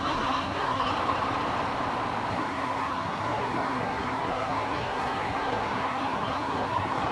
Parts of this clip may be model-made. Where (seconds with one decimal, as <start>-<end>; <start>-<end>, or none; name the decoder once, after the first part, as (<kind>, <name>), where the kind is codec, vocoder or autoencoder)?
0.0-0.9 (codec, SNAC); 2.3-7.1